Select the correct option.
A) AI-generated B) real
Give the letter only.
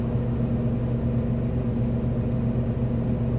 B